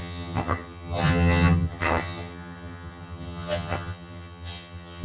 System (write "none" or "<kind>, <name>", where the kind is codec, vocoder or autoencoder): vocoder, HiFi-GAN